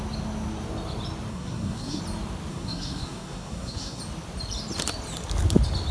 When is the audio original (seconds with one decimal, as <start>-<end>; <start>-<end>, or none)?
0.0-1.3; 2.0-2.5; 4.0-5.9